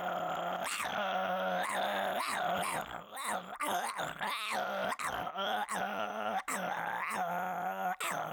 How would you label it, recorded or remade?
recorded